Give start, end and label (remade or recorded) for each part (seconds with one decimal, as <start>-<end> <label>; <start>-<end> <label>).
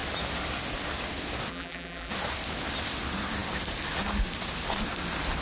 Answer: 0.0-1.5 recorded; 1.5-2.1 remade; 2.1-5.4 recorded